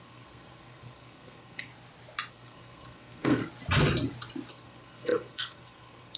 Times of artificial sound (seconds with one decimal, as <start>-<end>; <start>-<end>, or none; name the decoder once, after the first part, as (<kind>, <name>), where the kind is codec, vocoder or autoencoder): 0.0-1.7 (codec, SNAC); 2.3-3.4; 4.5-6.2